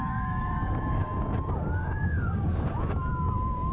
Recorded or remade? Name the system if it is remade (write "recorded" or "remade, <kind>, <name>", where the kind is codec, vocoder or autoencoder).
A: remade, codec, DAC